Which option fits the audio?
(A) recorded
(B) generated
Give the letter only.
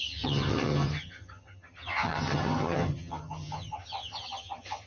B